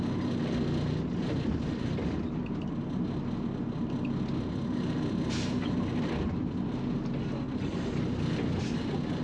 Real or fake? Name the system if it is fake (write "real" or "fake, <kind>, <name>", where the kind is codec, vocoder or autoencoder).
real